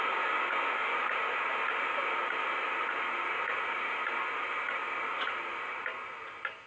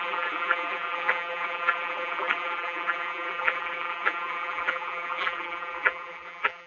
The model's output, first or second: second